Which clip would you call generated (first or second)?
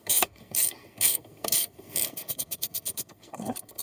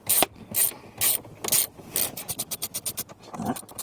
first